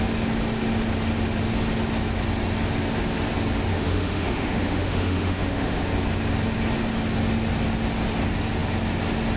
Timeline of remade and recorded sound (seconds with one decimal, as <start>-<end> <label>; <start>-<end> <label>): 0.0-3.7 recorded; 3.7-5.8 remade; 5.8-9.4 recorded